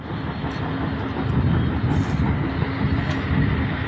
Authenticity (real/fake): real